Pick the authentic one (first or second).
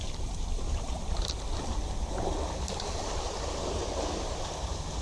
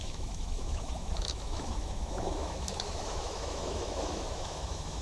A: first